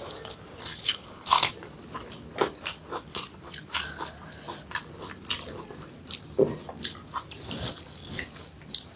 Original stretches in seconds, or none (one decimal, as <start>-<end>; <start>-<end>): 0.0-0.7; 1.5-9.0